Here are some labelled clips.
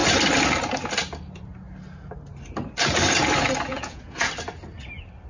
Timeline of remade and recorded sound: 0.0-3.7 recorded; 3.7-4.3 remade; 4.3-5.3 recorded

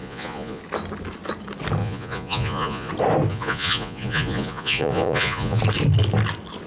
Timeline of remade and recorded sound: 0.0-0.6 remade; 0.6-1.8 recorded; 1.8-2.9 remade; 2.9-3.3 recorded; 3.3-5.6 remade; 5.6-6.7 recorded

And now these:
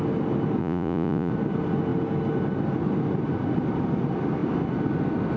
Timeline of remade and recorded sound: 0.0-0.6 recorded; 0.6-1.3 remade; 1.3-5.4 recorded

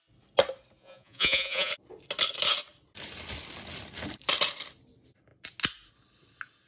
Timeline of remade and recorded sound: 0.0-0.8 recorded; 0.8-1.7 remade; 1.7-6.7 recorded

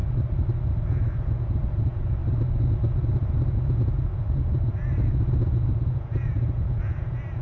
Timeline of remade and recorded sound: 0.0-0.9 recorded; 0.9-2.2 remade; 2.2-3.5 recorded; 3.5-7.4 remade

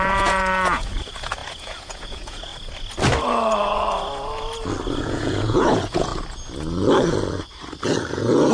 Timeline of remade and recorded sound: 0.0-2.5 remade; 2.5-5.0 recorded; 5.0-6.1 remade; 6.1-8.1 recorded; 8.1-8.5 remade

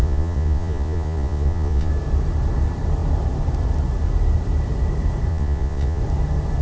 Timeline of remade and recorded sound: 0.0-1.9 remade; 1.9-5.3 recorded; 5.3-6.0 remade; 6.0-6.6 recorded

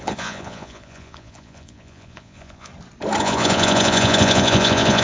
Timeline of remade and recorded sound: 0.0-2.7 remade; 2.7-3.2 recorded; 3.2-5.0 remade